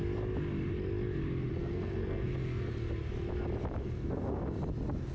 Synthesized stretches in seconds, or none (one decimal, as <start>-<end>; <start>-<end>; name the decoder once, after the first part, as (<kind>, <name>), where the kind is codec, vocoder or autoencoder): 1.6-2.3 (codec, SNAC); 3.8-4.4